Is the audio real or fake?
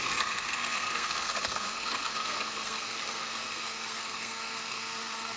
fake